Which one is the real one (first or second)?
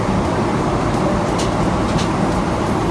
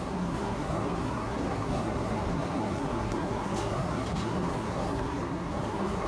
first